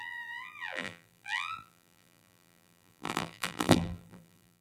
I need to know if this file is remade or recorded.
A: remade